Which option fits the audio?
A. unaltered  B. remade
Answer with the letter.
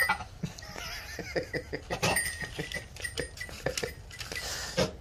A